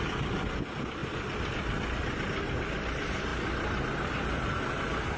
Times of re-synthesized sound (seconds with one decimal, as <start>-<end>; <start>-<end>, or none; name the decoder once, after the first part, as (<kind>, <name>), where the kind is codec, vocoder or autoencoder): 1.0-1.7 (vocoder, BigVGAN v2); 3.3-4.5

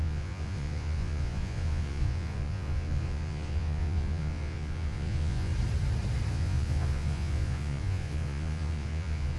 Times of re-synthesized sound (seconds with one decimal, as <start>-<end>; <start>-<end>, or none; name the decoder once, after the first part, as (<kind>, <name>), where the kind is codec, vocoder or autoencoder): 0.0-5.5 (vocoder, Vocos); 6.3-9.4

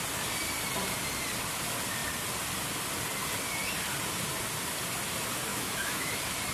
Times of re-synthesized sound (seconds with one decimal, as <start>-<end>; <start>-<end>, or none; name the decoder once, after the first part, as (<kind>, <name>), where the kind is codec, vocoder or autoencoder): 5.5-6.1 (autoencoder, DAC-VAE)

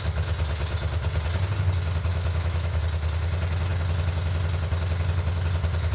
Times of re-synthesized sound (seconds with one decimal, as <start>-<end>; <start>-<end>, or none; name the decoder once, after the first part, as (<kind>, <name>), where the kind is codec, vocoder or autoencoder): 2.1-2.8 (autoencoder, DAC-VAE)

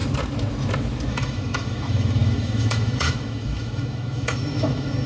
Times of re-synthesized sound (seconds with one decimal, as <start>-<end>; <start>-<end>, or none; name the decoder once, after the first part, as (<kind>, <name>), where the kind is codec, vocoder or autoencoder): 1.1-5.1 (autoencoder, DAC-VAE)

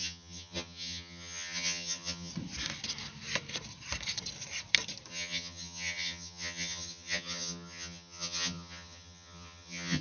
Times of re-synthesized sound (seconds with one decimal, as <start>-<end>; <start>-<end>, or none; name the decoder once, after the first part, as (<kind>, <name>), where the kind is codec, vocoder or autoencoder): 0.0-2.3 (vocoder, HiFi-GAN); 5.1-10.0

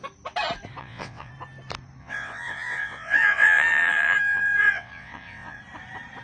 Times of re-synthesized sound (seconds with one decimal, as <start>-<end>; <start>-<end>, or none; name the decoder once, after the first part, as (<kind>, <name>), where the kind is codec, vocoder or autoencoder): 0.8-1.3 (vocoder, WaveNeXt); 2.0-5.6